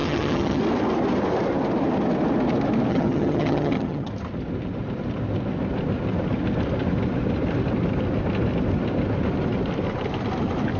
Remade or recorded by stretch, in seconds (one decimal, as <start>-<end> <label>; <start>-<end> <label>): 0.0-0.6 remade; 0.6-2.9 recorded; 2.9-4.1 remade; 4.1-10.8 recorded